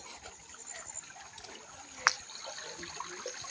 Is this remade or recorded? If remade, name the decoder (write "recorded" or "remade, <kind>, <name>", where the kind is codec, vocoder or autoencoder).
recorded